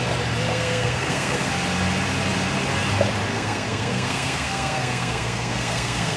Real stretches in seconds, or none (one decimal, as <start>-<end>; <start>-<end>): 0.0-0.5; 1.5-3.3